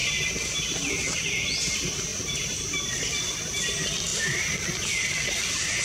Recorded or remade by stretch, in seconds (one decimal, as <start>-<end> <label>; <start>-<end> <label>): 0.0-0.9 remade; 0.9-2.1 recorded; 2.1-3.0 remade; 3.0-4.1 recorded; 4.1-5.3 remade; 5.3-5.8 recorded